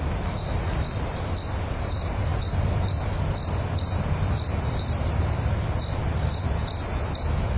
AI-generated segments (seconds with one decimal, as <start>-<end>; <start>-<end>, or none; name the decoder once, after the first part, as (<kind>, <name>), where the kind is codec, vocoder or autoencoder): none